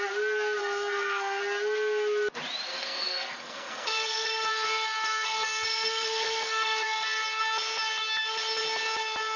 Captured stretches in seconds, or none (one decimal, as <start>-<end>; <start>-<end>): 0.0-0.6; 1.4-2.7; 7.4-9.4